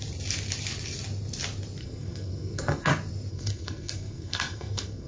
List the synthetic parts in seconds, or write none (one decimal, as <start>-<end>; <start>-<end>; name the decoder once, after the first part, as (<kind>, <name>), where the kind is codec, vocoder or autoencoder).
1.8-2.9 (codec, SNAC); 3.3-5.1